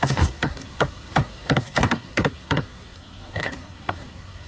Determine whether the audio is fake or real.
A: fake